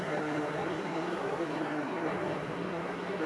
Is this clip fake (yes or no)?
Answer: yes